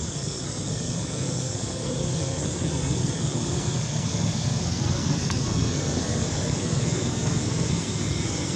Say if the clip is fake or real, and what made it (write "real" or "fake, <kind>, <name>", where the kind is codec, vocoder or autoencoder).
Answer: fake, codec, SNAC